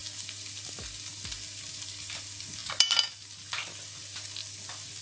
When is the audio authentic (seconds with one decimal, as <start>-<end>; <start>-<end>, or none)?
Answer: 0.0-5.0